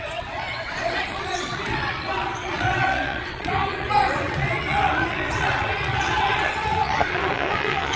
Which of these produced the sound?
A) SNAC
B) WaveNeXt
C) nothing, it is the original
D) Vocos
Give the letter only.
B